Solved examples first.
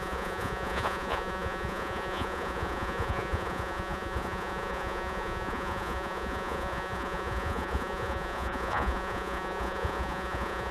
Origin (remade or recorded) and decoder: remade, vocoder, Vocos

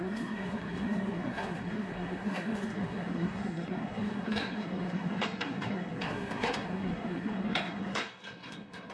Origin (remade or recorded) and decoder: remade, codec, SNAC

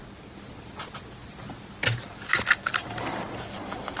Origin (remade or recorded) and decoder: recorded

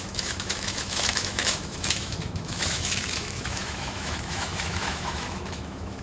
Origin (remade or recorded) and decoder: remade, autoencoder, DAC-VAE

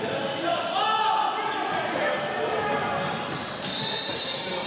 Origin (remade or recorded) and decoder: recorded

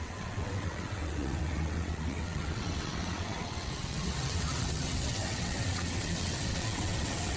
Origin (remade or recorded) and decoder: remade, vocoder, WaveNeXt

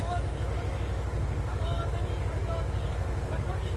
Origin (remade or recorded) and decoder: remade, codec, DAC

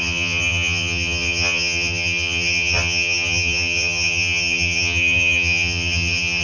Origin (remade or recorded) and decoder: remade, vocoder, HiFi-GAN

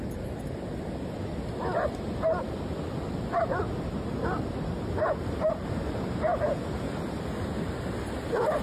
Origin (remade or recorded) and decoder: recorded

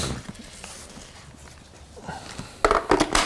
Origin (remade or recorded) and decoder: recorded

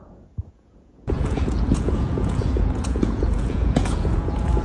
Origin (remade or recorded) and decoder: remade, vocoder, Vocos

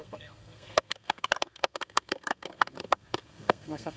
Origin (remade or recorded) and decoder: remade, codec, SNAC